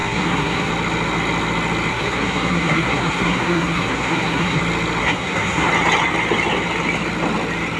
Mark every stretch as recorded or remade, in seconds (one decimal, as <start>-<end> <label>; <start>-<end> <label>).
0.0-0.7 remade; 0.7-1.9 recorded; 1.9-4.6 remade; 4.6-5.0 recorded; 5.0-5.7 remade; 5.7-7.8 recorded